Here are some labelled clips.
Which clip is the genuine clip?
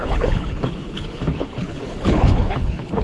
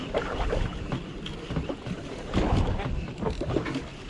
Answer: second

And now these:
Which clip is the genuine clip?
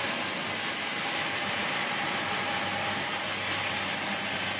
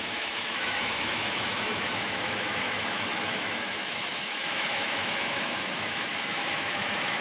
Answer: first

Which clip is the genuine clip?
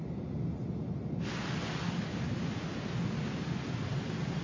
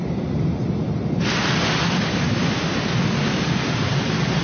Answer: first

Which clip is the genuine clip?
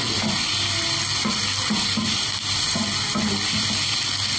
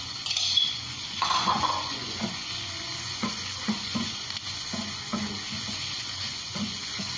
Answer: first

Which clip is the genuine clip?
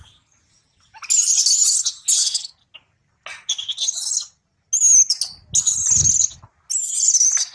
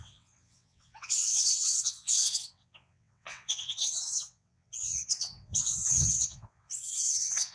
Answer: first